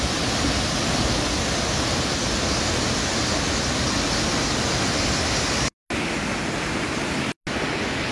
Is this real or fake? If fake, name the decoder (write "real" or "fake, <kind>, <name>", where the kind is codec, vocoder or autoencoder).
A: real